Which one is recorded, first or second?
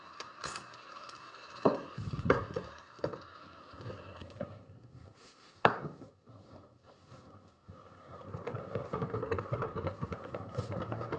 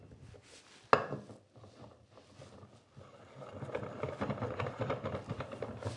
second